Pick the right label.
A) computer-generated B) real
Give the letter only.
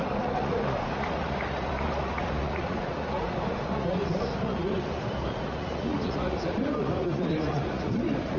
A